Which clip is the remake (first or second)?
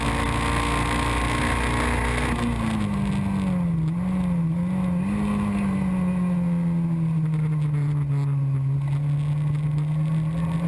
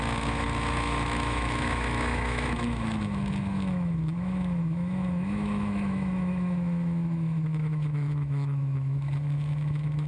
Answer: second